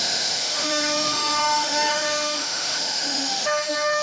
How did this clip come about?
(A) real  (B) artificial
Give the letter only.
B